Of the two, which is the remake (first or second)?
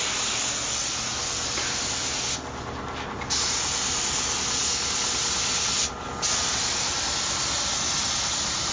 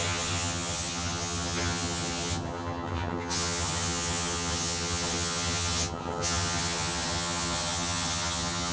second